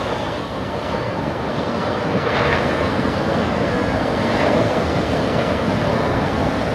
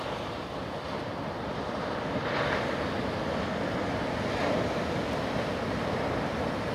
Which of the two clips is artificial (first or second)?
first